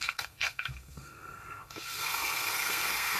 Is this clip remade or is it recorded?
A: remade